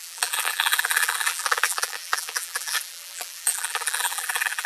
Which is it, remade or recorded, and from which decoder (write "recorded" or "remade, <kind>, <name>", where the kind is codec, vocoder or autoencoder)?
remade, vocoder, BigVGAN v2